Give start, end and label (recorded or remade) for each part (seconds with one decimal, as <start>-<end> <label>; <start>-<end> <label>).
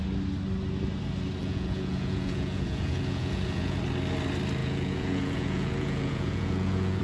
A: 0.0-1.4 recorded; 1.4-3.8 remade; 3.8-4.6 recorded; 4.6-7.0 remade